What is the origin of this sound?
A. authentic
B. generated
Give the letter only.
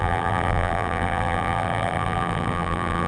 B